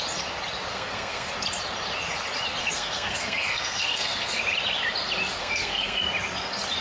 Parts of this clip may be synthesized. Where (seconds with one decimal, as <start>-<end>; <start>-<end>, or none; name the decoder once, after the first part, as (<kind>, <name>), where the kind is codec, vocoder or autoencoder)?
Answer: 0.7-1.3 (codec, SNAC); 2.6-4.4; 5.4-6.0